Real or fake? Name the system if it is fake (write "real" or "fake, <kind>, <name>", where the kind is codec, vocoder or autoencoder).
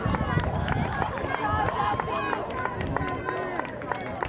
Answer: real